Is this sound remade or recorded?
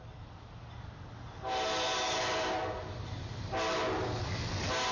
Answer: recorded